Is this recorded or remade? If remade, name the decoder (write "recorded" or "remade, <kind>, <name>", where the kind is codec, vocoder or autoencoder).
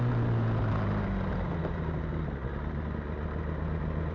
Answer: recorded